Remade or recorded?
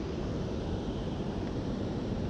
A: remade